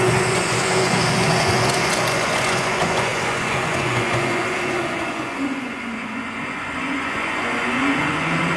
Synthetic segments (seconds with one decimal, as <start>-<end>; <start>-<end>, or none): 0.0-8.6